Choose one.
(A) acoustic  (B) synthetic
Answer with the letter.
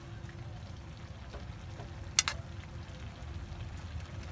A